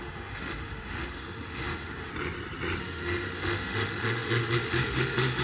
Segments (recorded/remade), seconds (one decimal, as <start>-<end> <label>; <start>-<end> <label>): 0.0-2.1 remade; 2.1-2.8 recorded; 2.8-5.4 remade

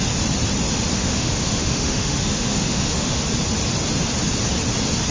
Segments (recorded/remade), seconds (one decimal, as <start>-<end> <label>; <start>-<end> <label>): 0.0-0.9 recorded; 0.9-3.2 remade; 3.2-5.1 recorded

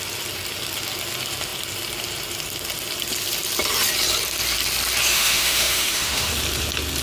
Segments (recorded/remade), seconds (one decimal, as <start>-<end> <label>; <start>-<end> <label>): 0.0-5.1 recorded; 5.1-6.3 remade; 6.3-7.0 recorded